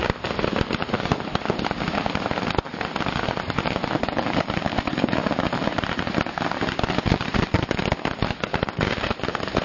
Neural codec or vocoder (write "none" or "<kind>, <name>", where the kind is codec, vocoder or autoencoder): vocoder, BigVGAN v2